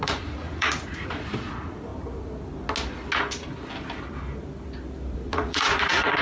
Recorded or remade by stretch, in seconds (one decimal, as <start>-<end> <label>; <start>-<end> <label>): 0.0-1.9 remade; 1.9-5.1 recorded; 5.1-6.2 remade